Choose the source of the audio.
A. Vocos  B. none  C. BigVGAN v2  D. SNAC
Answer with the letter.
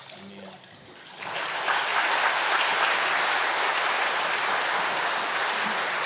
B